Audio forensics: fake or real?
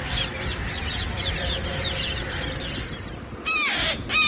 real